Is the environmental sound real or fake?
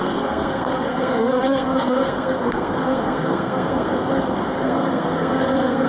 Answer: fake